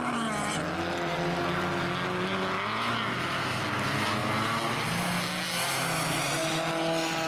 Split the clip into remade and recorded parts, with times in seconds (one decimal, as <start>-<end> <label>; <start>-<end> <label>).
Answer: 0.0-7.3 recorded